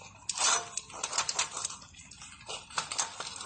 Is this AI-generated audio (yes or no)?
no